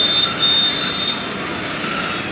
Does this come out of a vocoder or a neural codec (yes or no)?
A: no